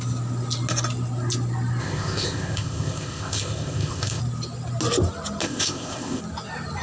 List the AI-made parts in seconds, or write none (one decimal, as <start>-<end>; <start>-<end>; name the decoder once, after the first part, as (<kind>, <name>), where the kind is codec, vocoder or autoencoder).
1.8-4.2 (codec, ZipCodec); 5.4-6.2